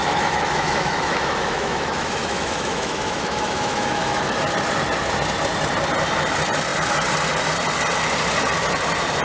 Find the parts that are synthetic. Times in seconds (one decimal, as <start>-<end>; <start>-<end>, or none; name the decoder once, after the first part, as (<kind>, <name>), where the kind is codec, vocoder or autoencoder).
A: 0.0-4.3 (autoencoder, DAC-VAE)